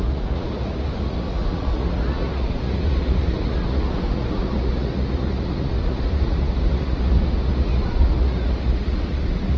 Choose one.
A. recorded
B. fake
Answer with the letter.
B